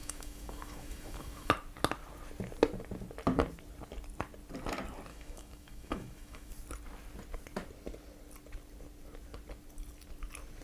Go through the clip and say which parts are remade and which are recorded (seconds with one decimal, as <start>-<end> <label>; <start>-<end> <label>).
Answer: 0.0-1.5 remade; 1.5-5.1 recorded; 5.1-6.5 remade; 6.5-10.6 recorded